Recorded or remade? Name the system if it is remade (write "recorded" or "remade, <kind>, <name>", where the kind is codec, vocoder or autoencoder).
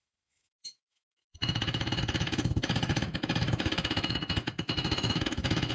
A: remade, autoencoder, DAC-VAE